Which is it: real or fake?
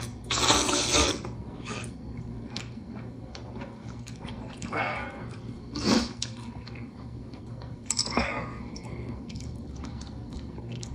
fake